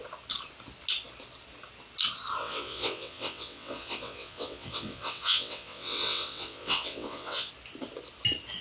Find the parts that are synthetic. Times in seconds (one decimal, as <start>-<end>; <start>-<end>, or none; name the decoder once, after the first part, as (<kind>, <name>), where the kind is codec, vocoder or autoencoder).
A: 2.4-7.5 (vocoder, WaveNeXt)